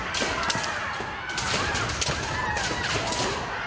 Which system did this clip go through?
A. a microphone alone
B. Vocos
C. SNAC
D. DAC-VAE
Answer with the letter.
A